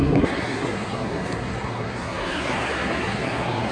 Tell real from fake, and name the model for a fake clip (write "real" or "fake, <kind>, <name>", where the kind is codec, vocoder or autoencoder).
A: fake, codec, SNAC